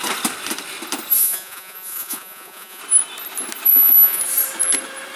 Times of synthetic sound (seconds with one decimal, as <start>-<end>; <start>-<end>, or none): 1.2-2.8; 3.7-4.2